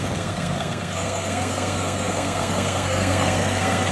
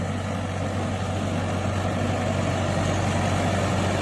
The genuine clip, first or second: second